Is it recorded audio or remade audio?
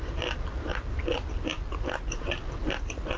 recorded